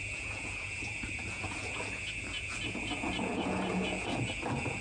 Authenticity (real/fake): fake